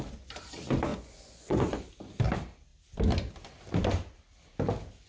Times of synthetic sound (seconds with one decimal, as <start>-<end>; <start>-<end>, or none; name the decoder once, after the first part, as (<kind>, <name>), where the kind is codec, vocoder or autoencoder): 0.9-1.9 (vocoder, Vocos)